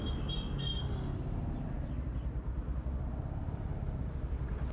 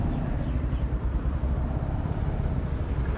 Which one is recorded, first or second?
first